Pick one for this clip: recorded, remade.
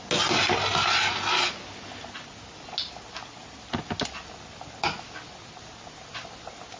recorded